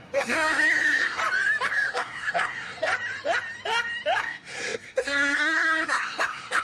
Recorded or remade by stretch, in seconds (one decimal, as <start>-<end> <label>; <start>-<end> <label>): 0.0-1.2 remade; 1.2-1.7 recorded; 1.7-2.9 remade; 2.9-4.2 recorded; 4.2-6.6 remade